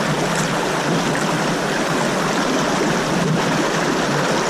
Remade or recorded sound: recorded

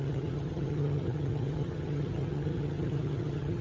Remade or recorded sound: remade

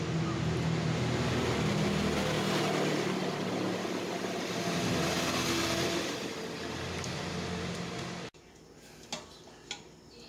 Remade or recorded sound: recorded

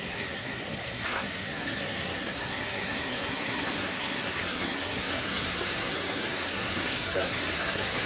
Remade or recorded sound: remade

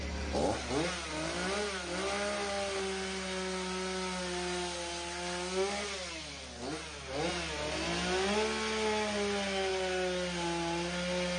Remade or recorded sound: recorded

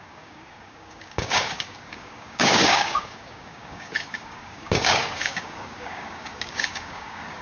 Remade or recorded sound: remade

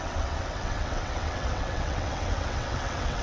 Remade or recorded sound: remade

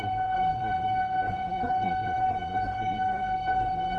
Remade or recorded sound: remade